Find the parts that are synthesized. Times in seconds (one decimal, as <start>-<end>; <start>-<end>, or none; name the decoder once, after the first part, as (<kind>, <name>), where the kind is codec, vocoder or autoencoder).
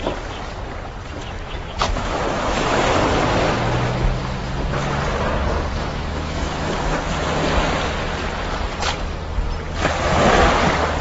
1.2-2.2 (autoencoder, DAC-VAE); 5.7-6.7